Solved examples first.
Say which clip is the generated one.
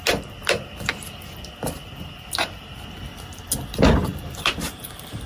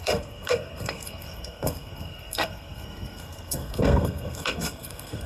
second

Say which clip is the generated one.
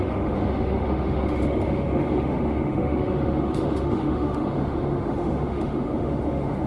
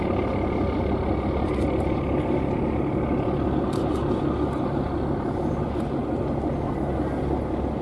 first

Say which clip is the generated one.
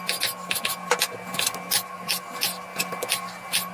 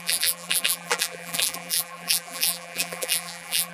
second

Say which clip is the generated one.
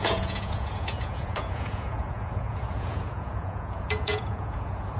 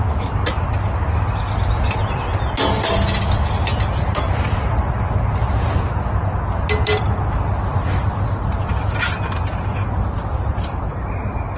first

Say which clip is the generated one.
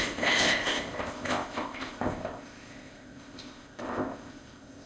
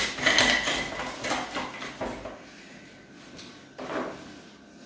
first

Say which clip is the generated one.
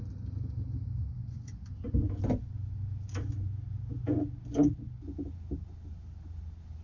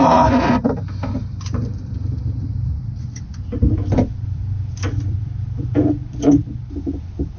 second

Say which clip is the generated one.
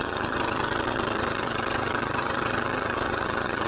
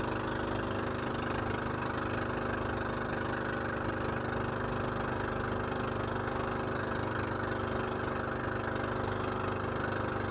first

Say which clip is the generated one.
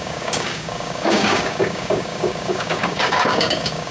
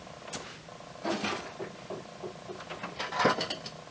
first